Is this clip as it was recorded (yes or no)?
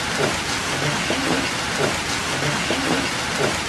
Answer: yes